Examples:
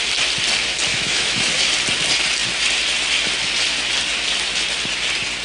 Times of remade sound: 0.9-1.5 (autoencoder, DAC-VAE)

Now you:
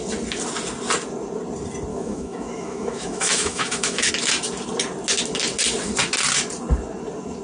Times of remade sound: 1.9-4.1 (autoencoder, DAC-VAE)

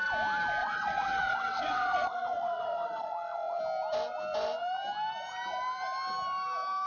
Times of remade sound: 0.6-3.6 (vocoder, WaveNeXt)

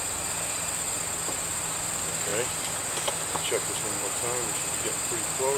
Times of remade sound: none

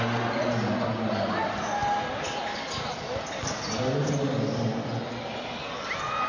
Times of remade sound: none

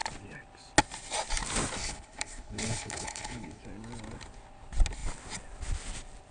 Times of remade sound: 1.8-3.6 (codec, HILCodec)

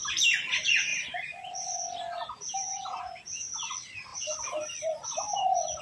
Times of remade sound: 0.9-3.0 (vocoder, BigVGAN v2); 4.1-5.8

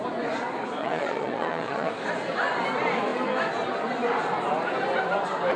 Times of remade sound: 0.8-1.9 (vocoder, Vocos)